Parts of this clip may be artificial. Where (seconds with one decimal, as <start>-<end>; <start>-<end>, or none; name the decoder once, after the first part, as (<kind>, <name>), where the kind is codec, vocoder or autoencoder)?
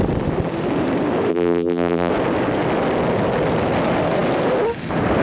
1.3-2.1 (vocoder, BigVGAN v2)